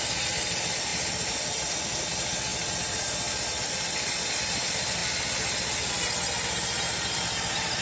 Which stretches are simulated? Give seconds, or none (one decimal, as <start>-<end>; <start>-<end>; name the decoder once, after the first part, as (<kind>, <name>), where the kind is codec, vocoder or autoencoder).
none